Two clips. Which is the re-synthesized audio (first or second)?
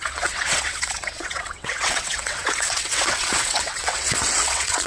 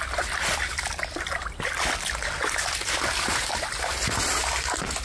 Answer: first